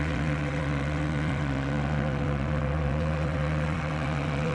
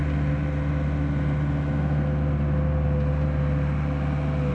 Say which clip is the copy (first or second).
first